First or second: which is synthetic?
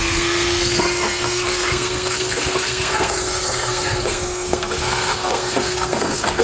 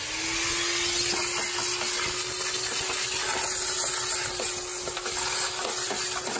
first